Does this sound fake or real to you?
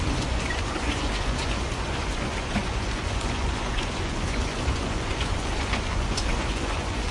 fake